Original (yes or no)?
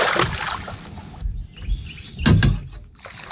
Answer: yes